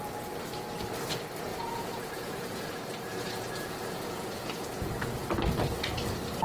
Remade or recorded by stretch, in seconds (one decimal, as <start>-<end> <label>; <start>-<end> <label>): 0.0-1.5 recorded; 1.5-5.3 remade; 5.3-6.4 recorded